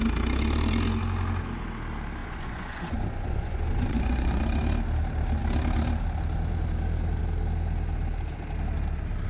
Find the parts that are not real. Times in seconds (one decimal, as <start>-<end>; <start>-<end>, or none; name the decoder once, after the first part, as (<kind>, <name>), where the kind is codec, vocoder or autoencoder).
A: 2.2-4.4 (vocoder, Vocos)